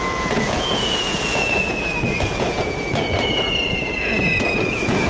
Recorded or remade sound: remade